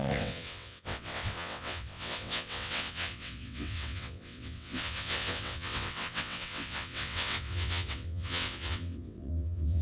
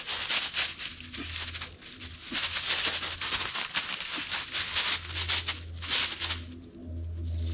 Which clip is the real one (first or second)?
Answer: second